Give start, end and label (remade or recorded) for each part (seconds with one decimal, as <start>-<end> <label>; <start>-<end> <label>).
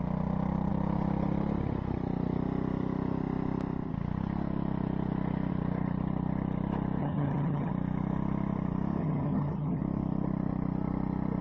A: 0.0-7.0 recorded; 7.0-7.7 remade; 7.7-9.0 recorded; 9.0-9.8 remade; 9.8-11.4 recorded